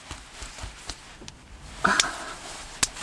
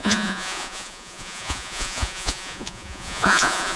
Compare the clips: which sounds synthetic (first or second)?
second